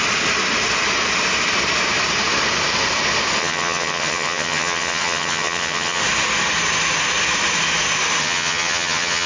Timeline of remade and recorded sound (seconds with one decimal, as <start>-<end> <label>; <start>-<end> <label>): 0.0-3.4 recorded; 3.4-6.0 remade; 6.0-8.2 recorded; 8.2-9.3 remade